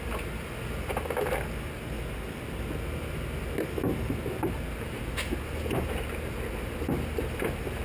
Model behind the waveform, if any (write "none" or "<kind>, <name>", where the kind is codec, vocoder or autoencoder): none